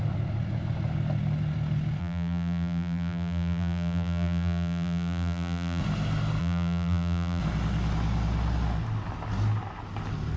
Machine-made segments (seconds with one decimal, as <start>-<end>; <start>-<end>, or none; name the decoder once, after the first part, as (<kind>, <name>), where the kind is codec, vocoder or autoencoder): 2.0-5.8 (vocoder, BigVGAN v2); 6.4-7.4